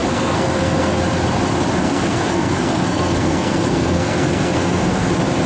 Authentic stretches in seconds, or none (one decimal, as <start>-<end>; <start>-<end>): 1.0-1.8; 5.1-5.5